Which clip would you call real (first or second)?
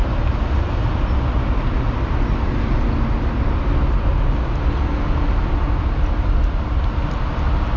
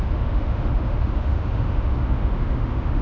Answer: first